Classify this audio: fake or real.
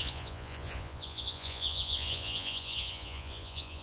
fake